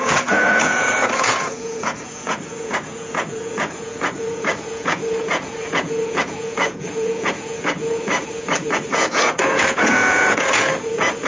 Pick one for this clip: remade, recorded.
remade